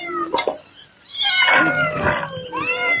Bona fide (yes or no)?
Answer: yes